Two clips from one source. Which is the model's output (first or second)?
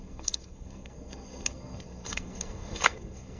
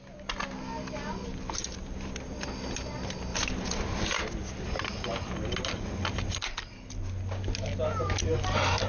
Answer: first